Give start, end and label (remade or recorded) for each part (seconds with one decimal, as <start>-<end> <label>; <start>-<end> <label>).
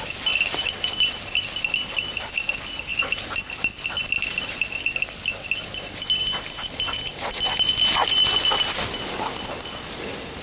0.0-10.4 recorded